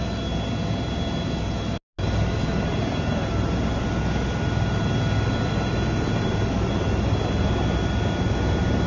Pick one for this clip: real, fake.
real